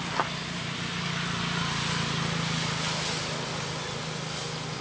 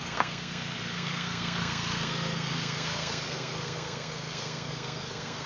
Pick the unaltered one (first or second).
first